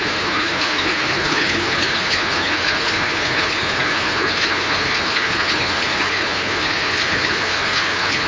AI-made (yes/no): yes